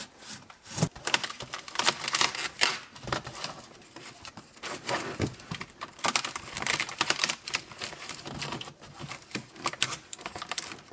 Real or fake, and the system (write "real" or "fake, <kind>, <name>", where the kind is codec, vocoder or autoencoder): fake, vocoder, BigVGAN v2